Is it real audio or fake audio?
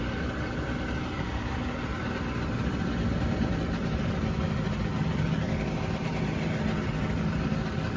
real